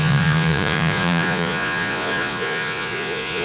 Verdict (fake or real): fake